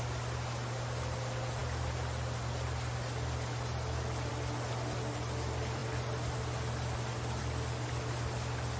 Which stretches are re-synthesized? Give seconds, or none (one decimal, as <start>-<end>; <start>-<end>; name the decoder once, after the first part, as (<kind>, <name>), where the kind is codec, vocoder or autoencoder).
none